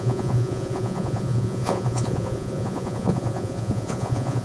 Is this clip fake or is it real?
fake